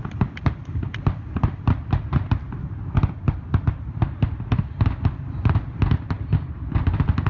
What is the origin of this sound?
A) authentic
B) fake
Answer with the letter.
A